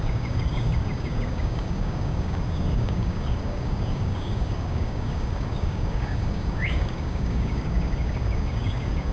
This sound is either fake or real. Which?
fake